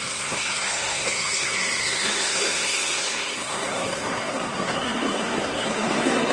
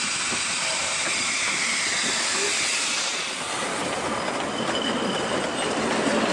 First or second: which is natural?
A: second